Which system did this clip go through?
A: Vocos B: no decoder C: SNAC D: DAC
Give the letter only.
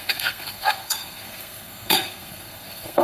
C